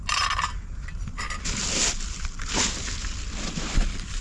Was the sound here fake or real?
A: real